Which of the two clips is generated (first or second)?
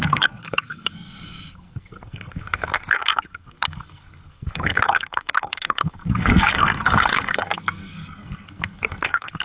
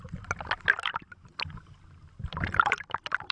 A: first